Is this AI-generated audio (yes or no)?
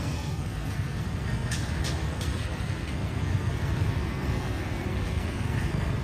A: yes